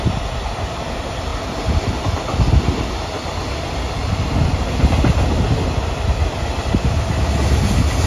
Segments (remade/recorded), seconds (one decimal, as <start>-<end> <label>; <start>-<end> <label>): 0.0-8.1 recorded

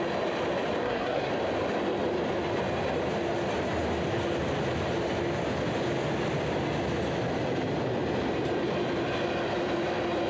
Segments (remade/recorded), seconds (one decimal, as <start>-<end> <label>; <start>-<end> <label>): 0.0-0.8 recorded; 0.8-1.3 remade; 1.3-10.3 recorded

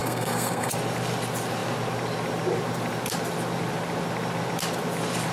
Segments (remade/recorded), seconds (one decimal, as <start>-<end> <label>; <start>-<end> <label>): 0.0-0.7 remade; 0.7-5.3 recorded

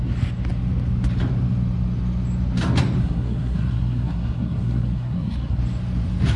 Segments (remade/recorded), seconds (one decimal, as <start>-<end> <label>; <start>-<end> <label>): 0.0-3.0 recorded; 3.0-5.6 remade; 5.6-6.4 recorded

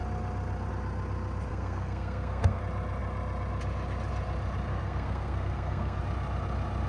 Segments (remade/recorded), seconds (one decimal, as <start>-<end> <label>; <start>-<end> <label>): 0.0-1.5 recorded; 1.5-2.6 remade; 2.6-4.7 recorded; 4.7-6.0 remade; 6.0-6.9 recorded

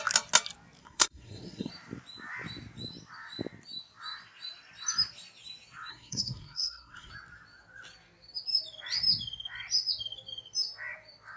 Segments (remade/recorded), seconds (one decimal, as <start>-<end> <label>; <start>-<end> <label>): 0.0-0.8 recorded; 0.8-1.7 remade; 1.7-5.9 recorded; 5.9-7.1 remade; 7.1-11.4 recorded